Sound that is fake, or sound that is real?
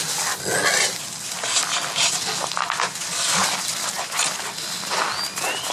real